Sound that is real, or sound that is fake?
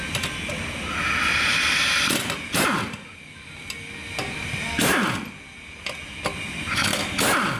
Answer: real